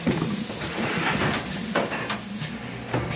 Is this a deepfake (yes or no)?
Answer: no